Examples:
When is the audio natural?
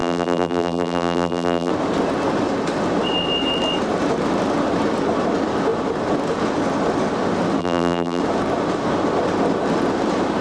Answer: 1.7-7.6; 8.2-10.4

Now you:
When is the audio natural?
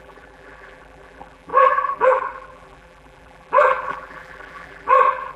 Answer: none